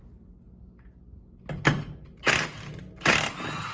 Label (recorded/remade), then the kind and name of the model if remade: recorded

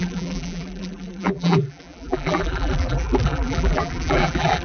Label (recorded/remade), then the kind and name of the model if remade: remade, vocoder, BigVGAN v2